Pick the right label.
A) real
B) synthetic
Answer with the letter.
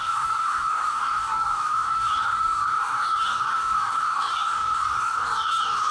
B